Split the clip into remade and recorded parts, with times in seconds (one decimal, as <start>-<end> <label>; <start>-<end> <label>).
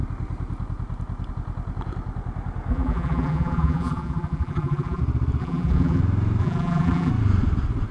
0.0-2.7 recorded; 2.7-5.0 remade; 5.0-5.4 recorded; 5.4-6.0 remade; 6.0-6.4 recorded; 6.4-7.1 remade; 7.1-7.9 recorded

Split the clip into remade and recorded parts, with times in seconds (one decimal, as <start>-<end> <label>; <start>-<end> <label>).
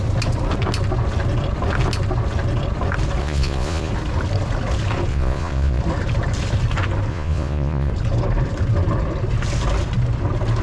0.0-3.2 recorded; 3.2-3.9 remade; 3.9-5.1 recorded; 5.1-5.8 remade; 5.8-7.1 recorded; 7.1-7.9 remade; 7.9-10.6 recorded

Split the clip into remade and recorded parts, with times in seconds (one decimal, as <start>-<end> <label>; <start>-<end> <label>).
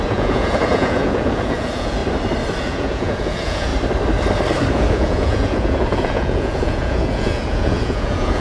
0.0-2.0 remade; 2.0-2.6 recorded; 2.6-3.7 remade; 3.7-4.7 recorded; 4.7-8.4 remade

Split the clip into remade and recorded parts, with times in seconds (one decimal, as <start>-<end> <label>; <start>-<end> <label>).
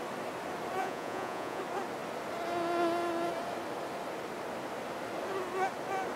0.0-0.8 recorded; 0.8-1.6 remade; 1.6-6.2 recorded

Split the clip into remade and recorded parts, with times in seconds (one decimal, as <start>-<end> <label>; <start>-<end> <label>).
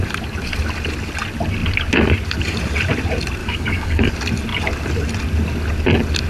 0.0-3.4 recorded; 3.4-4.1 remade; 4.1-6.3 recorded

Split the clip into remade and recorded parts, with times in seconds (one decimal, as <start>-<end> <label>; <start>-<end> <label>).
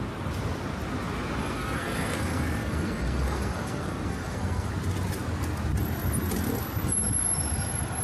0.0-1.4 recorded; 1.4-4.7 remade; 4.7-8.0 recorded